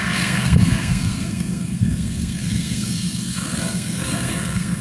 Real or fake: fake